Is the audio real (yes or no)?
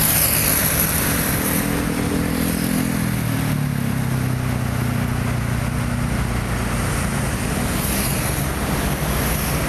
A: yes